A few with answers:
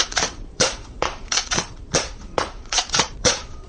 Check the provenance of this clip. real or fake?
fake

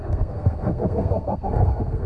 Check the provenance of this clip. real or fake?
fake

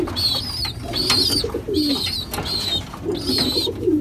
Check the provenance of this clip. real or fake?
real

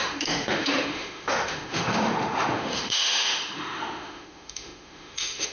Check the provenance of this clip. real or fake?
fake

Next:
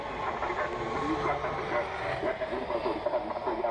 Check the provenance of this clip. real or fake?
real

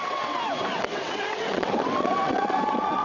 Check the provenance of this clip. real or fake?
fake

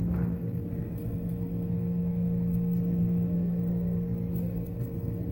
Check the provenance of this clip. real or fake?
fake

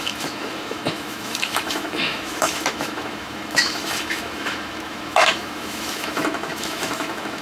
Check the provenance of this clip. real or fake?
fake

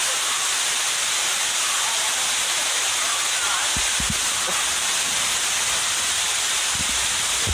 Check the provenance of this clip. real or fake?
real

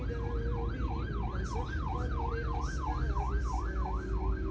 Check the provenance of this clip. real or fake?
real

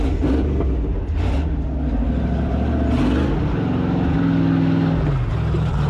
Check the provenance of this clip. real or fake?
real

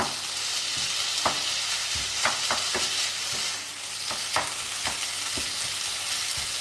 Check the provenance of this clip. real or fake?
real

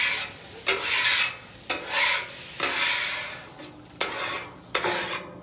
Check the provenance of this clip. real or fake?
real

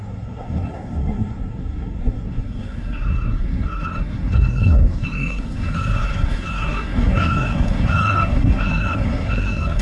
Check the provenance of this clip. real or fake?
fake